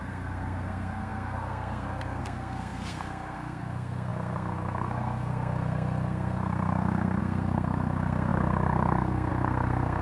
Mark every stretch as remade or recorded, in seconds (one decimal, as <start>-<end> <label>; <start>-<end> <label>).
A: 0.0-10.0 remade